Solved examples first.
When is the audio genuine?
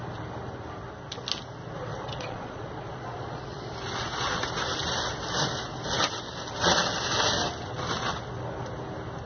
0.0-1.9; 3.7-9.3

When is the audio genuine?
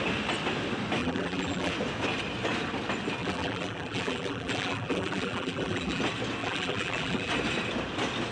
0.0-1.0; 1.7-3.2; 6.0-6.4; 7.3-8.3